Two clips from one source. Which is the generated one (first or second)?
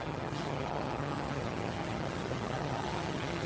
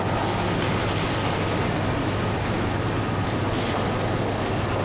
first